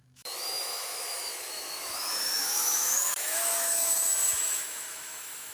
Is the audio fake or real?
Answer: fake